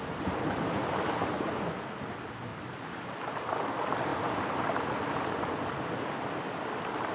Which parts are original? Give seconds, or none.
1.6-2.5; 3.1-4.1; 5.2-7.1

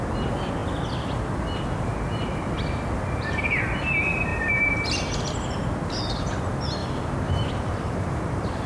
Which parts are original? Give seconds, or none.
0.0-4.3; 5.3-6.8

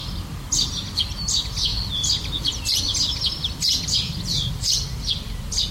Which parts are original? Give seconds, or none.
0.0-0.8

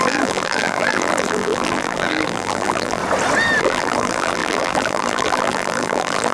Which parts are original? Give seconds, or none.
3.0-3.6